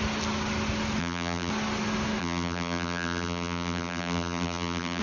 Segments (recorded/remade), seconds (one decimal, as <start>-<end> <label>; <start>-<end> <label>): 0.0-1.0 recorded; 1.0-1.5 remade; 1.5-2.2 recorded; 2.2-5.0 remade

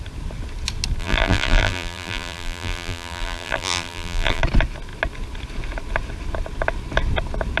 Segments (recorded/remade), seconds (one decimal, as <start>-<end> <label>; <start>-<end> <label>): 0.0-1.0 recorded; 1.0-4.4 remade; 4.4-7.6 recorded

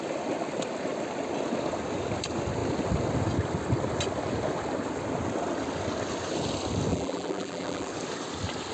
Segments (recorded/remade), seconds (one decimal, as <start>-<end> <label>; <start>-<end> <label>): 0.0-6.9 recorded; 6.9-7.9 remade; 7.9-8.7 recorded